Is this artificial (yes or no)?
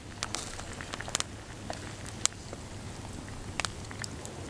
no